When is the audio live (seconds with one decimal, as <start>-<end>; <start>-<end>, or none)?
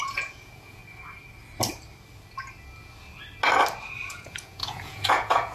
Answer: 0.8-4.1